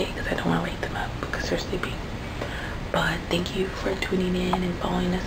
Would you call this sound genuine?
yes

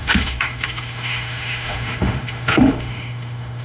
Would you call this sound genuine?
no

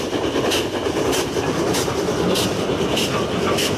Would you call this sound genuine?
yes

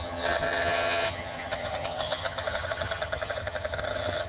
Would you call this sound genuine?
no